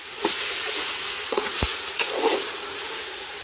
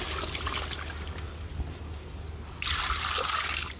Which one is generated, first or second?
first